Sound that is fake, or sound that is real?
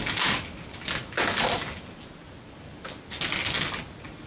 real